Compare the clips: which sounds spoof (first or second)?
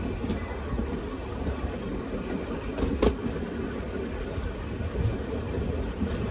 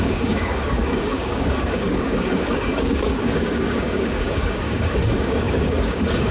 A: second